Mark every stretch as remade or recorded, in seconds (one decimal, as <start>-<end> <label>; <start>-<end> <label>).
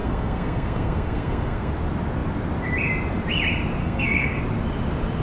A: 0.0-1.7 remade; 1.7-3.8 recorded; 3.8-4.4 remade; 4.4-5.2 recorded